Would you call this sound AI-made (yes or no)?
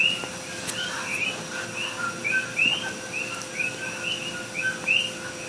no